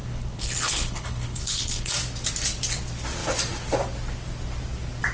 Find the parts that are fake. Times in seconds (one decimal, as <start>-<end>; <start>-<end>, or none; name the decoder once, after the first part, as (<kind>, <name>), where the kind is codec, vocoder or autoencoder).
0.0-1.9 (codec, HILCodec)